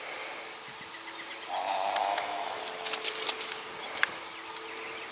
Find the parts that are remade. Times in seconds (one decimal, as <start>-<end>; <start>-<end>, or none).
2.0-2.6